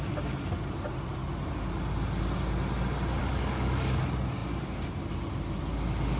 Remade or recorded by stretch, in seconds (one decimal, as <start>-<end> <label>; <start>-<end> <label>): 0.0-3.2 recorded; 3.2-4.0 remade; 4.0-6.2 recorded